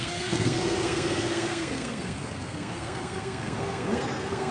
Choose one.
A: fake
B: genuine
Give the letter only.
A